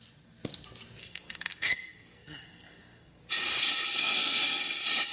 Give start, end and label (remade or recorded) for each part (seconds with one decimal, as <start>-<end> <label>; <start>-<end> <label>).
0.0-1.0 recorded; 1.0-3.2 remade; 3.2-4.0 recorded; 4.0-4.6 remade; 4.6-5.1 recorded